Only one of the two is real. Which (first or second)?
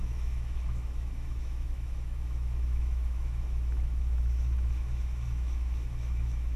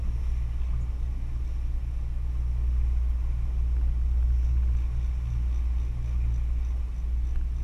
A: second